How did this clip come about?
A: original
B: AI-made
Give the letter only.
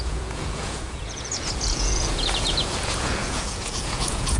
B